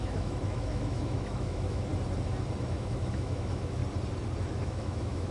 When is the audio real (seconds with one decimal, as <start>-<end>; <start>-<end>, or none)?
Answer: 1.9-2.6; 3.8-4.4